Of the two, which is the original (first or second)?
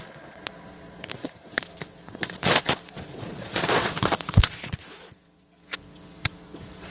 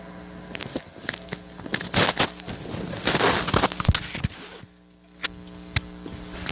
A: second